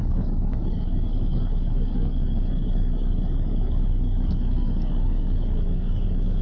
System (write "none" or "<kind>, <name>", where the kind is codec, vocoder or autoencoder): codec, DAC